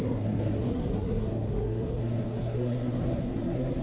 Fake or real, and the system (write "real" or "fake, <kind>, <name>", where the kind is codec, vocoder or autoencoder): fake, codec, SNAC